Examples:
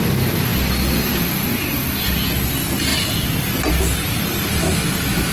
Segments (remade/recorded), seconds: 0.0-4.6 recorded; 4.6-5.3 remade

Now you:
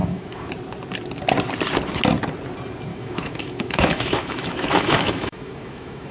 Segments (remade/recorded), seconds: 0.0-0.5 remade; 0.5-2.9 recorded; 2.9-6.1 remade

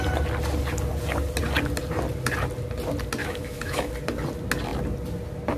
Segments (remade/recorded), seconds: 0.0-3.2 recorded; 3.2-3.9 remade; 3.9-5.6 recorded

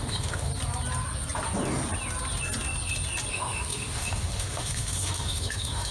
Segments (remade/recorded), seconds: 0.0-0.5 remade; 0.5-3.3 recorded; 3.3-5.9 remade

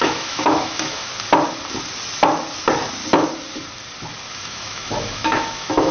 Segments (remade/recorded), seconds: 0.0-1.1 remade; 1.1-4.3 recorded; 4.3-5.9 remade

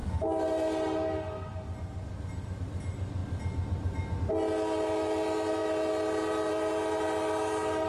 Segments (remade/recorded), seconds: 0.0-7.9 recorded

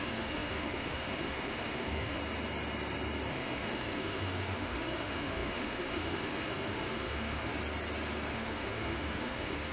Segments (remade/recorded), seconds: 0.0-2.2 remade; 2.2-3.3 recorded; 3.3-7.5 remade; 7.5-8.3 recorded; 8.3-9.7 remade